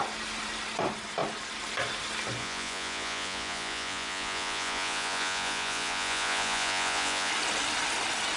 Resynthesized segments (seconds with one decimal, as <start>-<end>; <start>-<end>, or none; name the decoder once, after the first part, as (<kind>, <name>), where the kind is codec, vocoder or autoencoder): 2.4-7.3 (vocoder, Vocos)